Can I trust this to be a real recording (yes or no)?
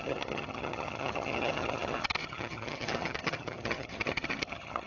no